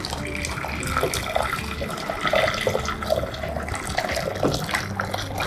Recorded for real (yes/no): yes